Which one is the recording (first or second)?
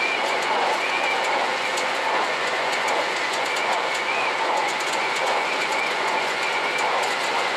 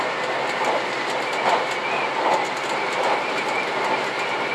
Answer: second